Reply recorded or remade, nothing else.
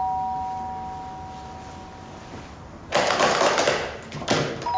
recorded